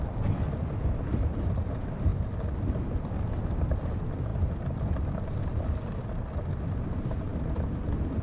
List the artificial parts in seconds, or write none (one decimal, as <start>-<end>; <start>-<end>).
none